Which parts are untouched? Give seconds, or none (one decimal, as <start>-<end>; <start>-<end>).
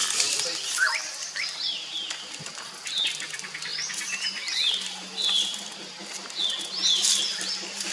2.1-7.9